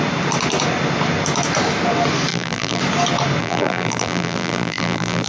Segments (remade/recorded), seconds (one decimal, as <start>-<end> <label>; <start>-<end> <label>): 0.0-2.3 recorded; 2.3-2.8 remade; 2.8-3.4 recorded; 3.4-5.3 remade